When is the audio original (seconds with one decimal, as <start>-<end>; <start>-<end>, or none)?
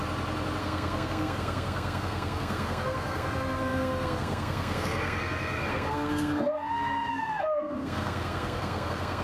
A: 0.0-0.6